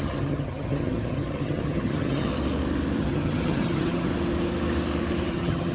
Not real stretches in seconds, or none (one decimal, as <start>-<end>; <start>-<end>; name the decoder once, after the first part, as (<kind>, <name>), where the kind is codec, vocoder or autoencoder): 0.0-2.3 (vocoder, HiFi-GAN); 3.0-4.1; 5.3-5.7